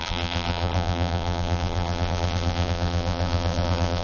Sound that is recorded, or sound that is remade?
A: remade